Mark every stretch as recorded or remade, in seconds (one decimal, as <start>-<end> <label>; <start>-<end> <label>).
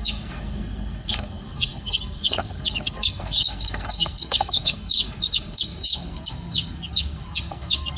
0.0-8.0 remade